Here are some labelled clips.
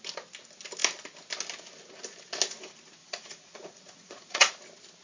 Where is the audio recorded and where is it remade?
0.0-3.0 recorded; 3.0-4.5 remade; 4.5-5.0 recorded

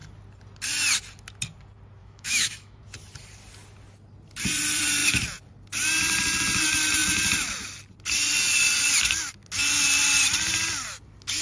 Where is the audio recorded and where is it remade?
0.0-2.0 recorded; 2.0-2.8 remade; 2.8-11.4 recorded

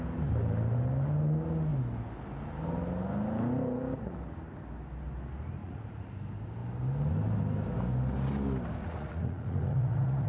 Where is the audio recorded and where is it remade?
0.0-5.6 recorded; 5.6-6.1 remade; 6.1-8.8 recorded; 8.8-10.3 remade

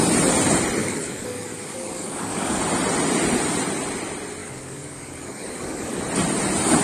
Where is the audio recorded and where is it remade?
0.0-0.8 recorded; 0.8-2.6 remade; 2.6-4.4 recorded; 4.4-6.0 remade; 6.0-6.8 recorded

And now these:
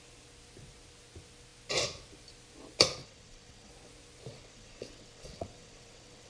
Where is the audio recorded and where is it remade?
0.0-3.0 recorded; 3.0-3.7 remade; 3.7-4.3 recorded; 4.3-6.3 remade

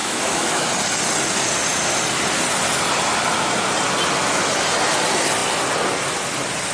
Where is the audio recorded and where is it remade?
0.0-0.7 remade; 0.7-6.7 recorded